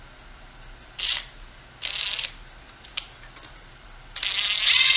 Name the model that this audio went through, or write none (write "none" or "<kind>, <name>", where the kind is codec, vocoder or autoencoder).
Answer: none